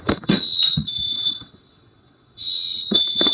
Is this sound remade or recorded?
remade